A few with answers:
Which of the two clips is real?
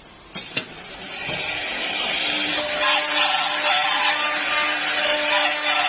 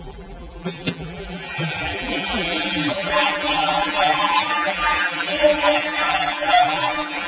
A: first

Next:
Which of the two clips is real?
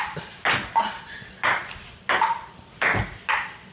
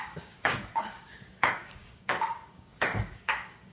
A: first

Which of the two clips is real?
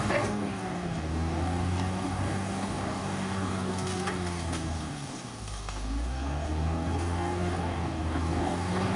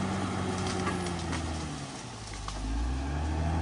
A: second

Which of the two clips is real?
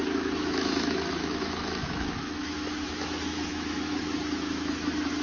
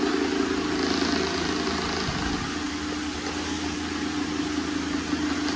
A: second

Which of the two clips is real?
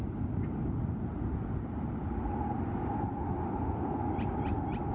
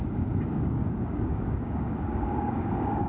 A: first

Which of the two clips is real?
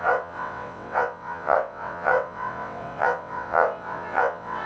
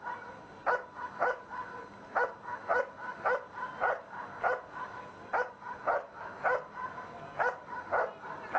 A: second